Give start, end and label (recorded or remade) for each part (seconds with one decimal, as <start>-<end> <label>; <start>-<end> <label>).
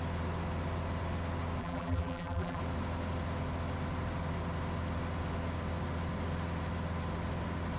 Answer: 0.0-1.6 recorded; 1.6-2.6 remade; 2.6-7.8 recorded